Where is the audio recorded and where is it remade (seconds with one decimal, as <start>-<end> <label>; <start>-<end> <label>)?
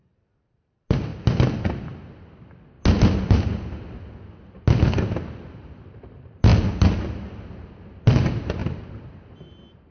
0.0-1.1 remade; 1.1-5.3 recorded; 5.3-6.5 remade; 6.5-7.5 recorded; 7.5-9.9 remade